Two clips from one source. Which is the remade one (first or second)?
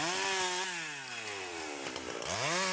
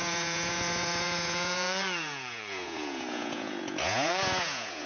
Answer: second